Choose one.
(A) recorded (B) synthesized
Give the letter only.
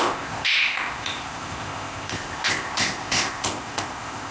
B